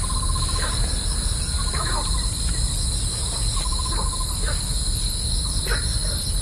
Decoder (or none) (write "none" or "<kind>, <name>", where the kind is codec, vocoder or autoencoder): none